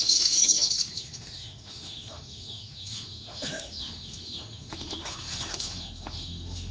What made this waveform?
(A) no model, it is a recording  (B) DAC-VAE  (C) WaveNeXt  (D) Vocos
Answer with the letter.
B